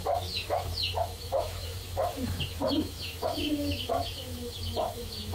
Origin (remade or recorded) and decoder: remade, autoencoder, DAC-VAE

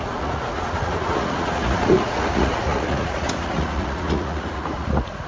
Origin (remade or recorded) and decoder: remade, vocoder, Vocos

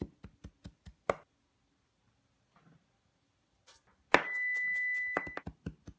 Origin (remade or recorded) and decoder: recorded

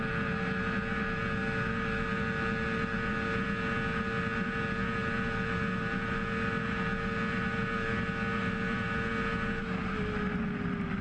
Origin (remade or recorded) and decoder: recorded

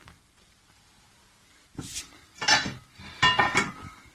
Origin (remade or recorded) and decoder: remade, vocoder, BigVGAN v2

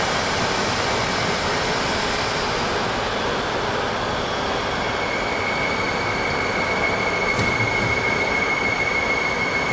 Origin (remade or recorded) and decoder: recorded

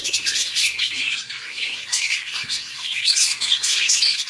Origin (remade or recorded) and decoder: remade, codec, SNAC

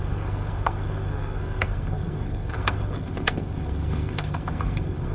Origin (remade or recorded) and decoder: remade, codec, SNAC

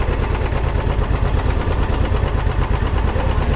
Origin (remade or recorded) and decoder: recorded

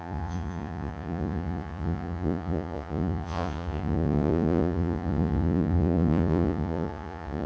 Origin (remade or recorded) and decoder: remade, vocoder, Vocos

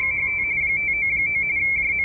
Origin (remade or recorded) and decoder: recorded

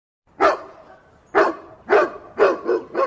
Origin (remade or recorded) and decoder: recorded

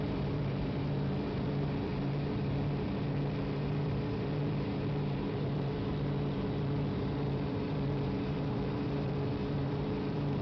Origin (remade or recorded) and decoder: remade, vocoder, BigVGAN v2